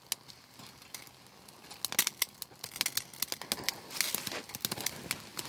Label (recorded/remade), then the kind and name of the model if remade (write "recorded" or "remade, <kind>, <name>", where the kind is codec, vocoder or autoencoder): recorded